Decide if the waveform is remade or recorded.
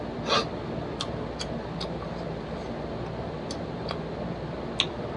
recorded